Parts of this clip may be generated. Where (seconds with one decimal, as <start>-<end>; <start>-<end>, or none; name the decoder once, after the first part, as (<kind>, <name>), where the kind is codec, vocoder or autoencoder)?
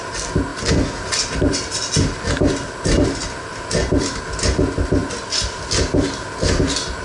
none